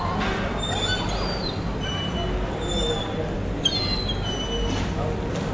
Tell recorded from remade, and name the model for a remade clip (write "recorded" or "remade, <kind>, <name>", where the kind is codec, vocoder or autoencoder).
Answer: recorded